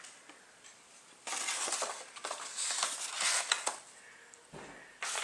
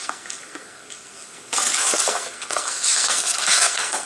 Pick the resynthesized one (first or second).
second